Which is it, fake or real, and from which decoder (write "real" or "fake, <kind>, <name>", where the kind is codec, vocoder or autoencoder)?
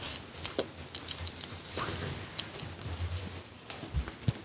real